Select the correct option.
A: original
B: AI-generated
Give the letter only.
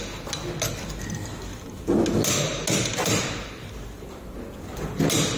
A